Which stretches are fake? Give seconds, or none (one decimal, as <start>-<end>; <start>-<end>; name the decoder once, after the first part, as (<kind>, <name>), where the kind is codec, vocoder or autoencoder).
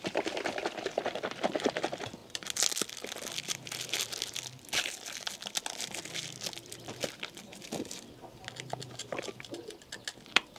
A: none